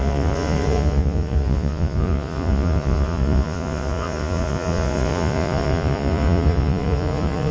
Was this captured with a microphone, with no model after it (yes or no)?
no